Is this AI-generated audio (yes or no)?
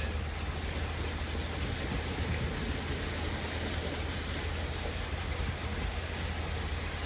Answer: no